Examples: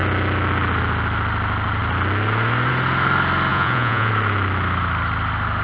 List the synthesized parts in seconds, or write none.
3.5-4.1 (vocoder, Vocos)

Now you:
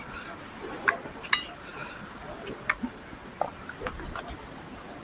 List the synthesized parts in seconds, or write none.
none

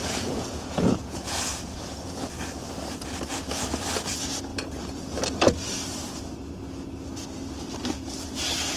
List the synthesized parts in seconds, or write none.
0.0-2.3 (vocoder, Vocos)

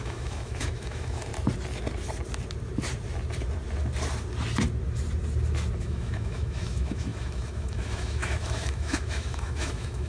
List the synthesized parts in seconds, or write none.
0.0-1.3 (autoencoder, DAC-VAE); 5.8-10.1

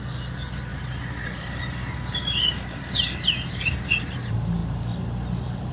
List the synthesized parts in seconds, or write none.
0.7-3.9 (vocoder, BigVGAN v2)

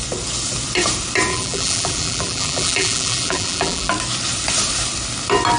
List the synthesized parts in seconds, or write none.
1.3-3.9 (vocoder, BigVGAN v2)

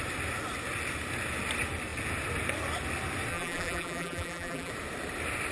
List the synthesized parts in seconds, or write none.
3.3-4.7 (vocoder, BigVGAN v2)